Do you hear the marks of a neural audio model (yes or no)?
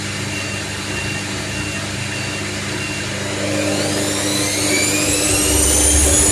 no